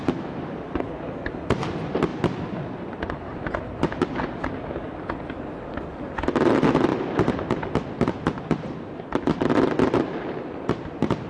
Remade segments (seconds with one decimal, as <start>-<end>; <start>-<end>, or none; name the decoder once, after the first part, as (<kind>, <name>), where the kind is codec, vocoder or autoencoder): none